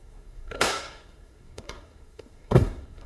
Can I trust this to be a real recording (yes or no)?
no